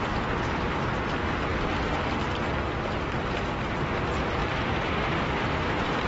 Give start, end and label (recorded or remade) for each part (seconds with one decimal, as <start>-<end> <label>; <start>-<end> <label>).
0.0-4.4 recorded; 4.4-6.1 remade